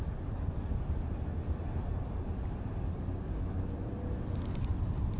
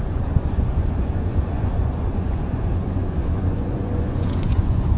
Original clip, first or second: first